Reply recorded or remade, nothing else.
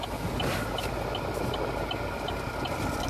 recorded